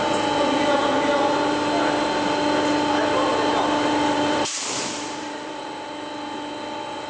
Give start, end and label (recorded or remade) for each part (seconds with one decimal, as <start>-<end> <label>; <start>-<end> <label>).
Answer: 0.0-3.5 recorded; 3.5-5.6 remade; 5.6-7.1 recorded